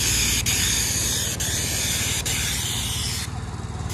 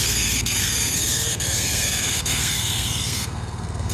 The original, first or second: first